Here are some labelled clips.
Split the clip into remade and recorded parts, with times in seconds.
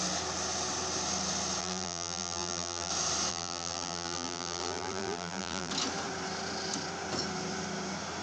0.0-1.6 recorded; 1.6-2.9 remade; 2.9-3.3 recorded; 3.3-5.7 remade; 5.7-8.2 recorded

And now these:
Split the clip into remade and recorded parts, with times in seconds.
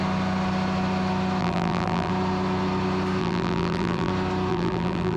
0.0-1.4 recorded; 1.4-2.1 remade; 2.1-3.2 recorded; 3.2-4.1 remade; 4.1-4.5 recorded; 4.5-5.2 remade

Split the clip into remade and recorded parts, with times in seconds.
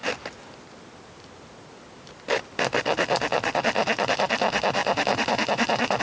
0.0-4.8 recorded; 4.8-6.0 remade